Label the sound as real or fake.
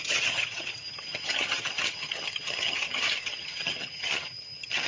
fake